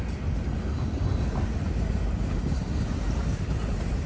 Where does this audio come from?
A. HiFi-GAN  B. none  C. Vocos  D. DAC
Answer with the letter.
B